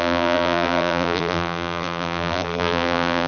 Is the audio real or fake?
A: fake